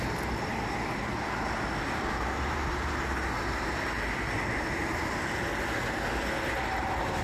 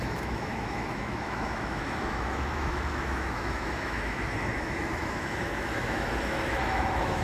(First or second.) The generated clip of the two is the second